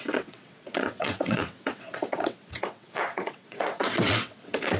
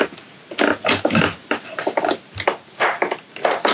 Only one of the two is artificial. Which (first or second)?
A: first